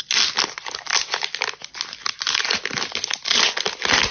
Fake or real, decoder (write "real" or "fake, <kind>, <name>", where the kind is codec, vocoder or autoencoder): real